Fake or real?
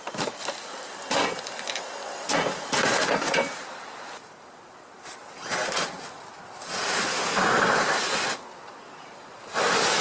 real